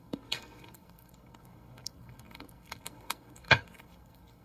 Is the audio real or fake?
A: fake